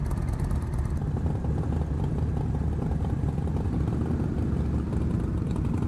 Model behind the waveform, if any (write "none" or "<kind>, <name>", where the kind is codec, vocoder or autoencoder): none